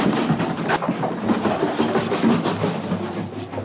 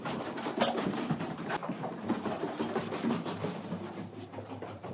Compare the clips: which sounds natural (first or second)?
first